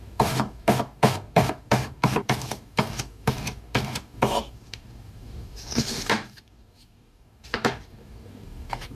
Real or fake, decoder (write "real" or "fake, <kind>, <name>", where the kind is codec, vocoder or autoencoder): fake, codec, DAC